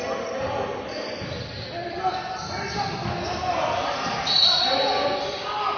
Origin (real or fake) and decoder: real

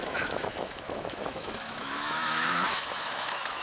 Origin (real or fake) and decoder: fake, autoencoder, DAC-VAE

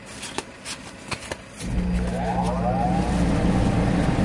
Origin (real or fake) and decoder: real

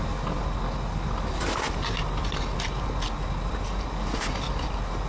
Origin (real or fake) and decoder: real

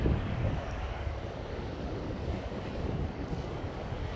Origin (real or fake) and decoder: fake, codec, DAC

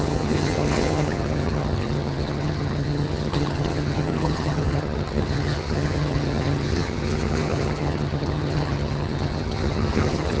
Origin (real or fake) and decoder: fake, vocoder, HiFi-GAN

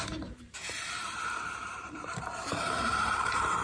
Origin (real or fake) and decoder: fake, vocoder, BigVGAN v2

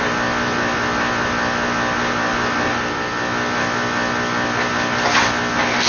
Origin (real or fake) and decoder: real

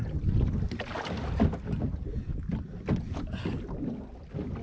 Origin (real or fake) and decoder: real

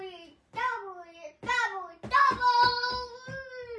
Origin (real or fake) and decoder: real